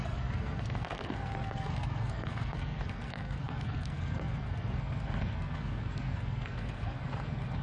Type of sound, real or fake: fake